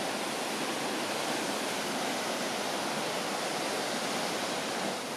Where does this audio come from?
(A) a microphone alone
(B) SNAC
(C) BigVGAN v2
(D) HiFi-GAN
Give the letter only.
A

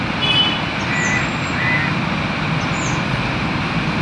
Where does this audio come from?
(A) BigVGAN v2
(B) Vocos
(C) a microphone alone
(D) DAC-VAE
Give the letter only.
C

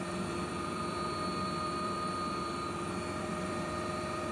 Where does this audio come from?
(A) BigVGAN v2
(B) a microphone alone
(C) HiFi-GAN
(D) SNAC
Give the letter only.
A